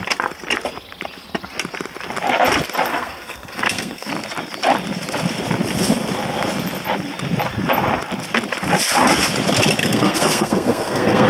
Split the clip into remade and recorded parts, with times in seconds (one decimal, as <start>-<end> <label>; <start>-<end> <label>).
0.0-2.9 recorded; 2.9-4.1 remade; 4.1-9.8 recorded; 9.8-11.3 remade